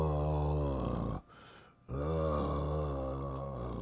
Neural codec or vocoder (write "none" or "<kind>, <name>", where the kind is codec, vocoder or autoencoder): none